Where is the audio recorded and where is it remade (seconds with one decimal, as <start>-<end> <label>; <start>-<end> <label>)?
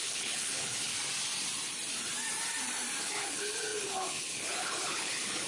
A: 0.0-0.9 remade; 0.9-3.0 recorded; 3.0-5.5 remade